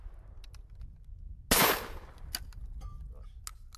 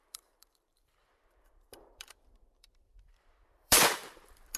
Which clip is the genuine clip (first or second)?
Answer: first